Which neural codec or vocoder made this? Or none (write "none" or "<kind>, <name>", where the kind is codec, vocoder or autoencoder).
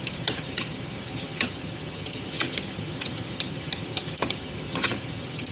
vocoder, HiFi-GAN